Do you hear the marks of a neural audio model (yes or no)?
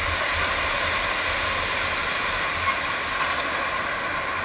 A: no